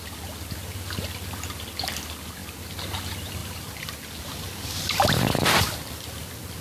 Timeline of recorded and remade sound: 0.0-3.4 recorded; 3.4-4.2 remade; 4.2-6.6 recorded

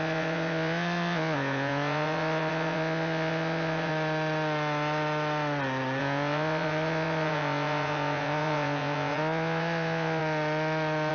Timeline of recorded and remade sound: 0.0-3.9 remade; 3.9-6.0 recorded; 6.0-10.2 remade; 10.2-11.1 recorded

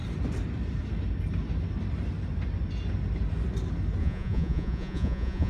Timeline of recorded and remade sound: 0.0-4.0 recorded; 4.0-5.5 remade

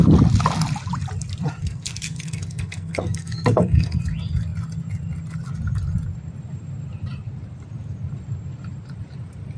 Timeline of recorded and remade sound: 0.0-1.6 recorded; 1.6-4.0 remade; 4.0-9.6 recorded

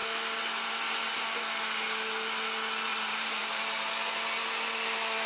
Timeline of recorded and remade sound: 0.0-2.9 recorded; 2.9-3.9 remade; 3.9-5.3 recorded

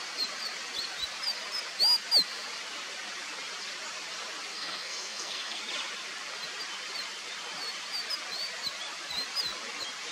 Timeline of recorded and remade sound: 0.0-4.5 recorded; 4.5-5.6 remade; 5.6-10.1 recorded